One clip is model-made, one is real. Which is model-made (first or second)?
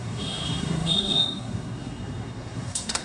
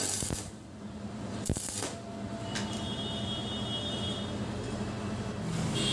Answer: first